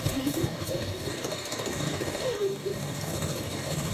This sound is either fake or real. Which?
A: fake